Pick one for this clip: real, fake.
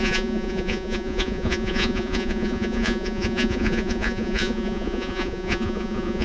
fake